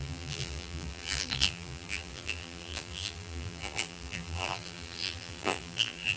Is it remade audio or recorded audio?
remade